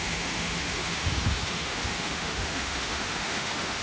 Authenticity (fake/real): fake